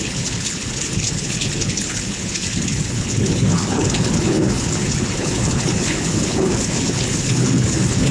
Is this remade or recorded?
remade